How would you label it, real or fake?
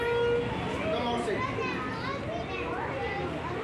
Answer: real